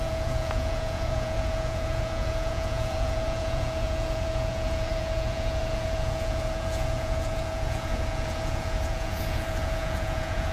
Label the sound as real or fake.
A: fake